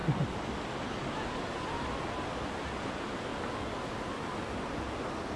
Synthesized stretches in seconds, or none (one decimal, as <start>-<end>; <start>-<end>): none